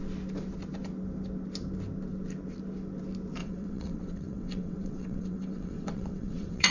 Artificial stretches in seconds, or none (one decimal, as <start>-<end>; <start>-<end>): 3.4-6.7